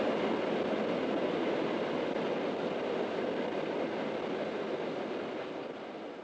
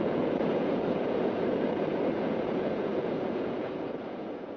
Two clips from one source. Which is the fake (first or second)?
second